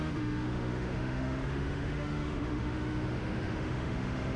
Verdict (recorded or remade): remade